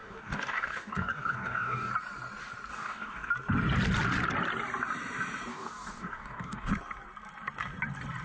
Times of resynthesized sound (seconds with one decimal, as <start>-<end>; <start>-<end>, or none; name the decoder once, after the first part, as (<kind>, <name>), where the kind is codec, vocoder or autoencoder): 0.0-1.9 (codec, DAC); 2.7-3.3; 5.5-6.7